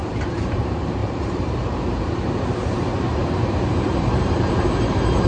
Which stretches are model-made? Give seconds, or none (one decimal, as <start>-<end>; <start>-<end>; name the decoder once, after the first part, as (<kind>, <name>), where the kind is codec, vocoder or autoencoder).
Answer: 0.0-5.3 (vocoder, BigVGAN v2)